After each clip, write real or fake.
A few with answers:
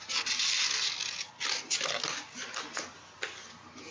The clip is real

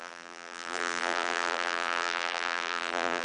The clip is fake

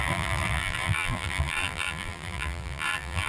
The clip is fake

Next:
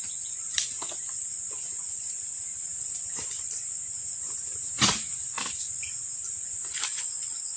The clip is fake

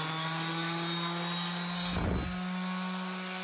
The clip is real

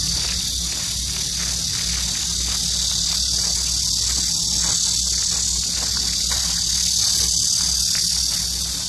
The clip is real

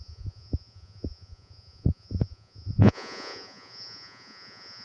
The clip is fake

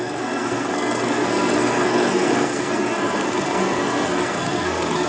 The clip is fake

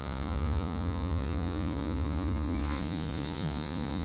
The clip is fake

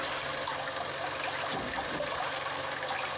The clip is real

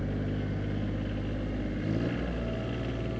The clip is real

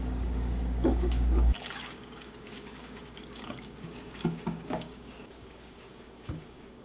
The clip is fake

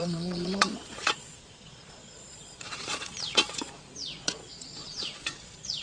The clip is fake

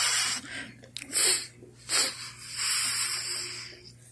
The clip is real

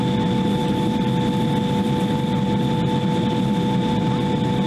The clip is real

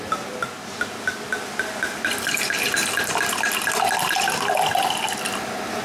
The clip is real